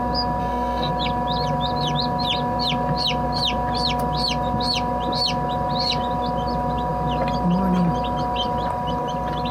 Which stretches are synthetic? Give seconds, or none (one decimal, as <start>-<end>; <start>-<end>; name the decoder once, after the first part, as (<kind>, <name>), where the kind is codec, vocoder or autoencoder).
0.4-0.9 (codec, SNAC)